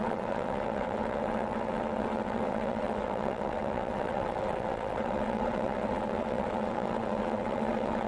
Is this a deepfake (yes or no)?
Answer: yes